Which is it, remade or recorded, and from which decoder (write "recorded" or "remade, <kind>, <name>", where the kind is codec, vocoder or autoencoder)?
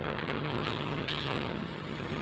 remade, vocoder, HiFi-GAN